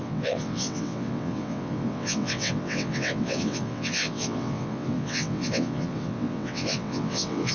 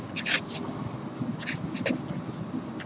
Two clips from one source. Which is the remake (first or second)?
first